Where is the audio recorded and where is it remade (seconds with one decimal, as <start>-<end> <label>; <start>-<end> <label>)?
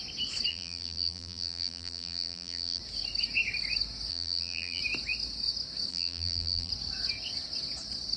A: 0.0-0.5 recorded; 0.5-2.8 remade; 2.8-4.1 recorded; 4.1-4.8 remade; 4.8-5.9 recorded; 5.9-6.7 remade; 6.7-8.2 recorded